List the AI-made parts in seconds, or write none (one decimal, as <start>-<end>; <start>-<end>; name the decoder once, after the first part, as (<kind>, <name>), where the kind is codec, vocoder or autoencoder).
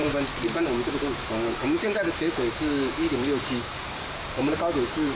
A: 0.6-5.1 (codec, DAC)